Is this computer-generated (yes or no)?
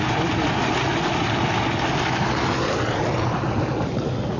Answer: no